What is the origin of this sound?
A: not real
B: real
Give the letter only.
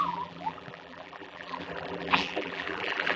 A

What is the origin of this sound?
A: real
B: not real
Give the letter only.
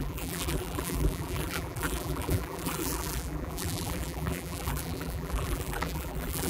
B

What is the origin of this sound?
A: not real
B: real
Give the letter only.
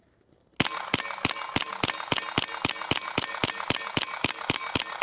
B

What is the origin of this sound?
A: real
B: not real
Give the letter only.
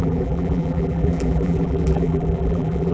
B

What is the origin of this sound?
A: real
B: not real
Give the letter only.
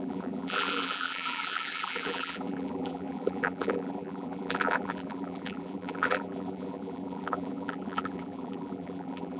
B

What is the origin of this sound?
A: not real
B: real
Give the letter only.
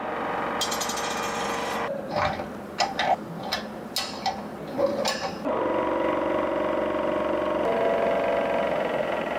B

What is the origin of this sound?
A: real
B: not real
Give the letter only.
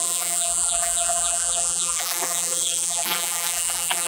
B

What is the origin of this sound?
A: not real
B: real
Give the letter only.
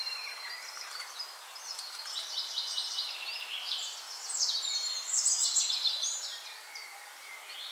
A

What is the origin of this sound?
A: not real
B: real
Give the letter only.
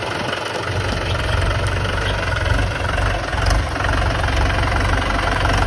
B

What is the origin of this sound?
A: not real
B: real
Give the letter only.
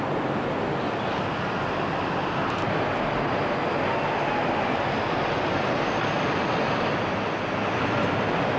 B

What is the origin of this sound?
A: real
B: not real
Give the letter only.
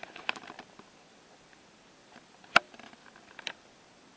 B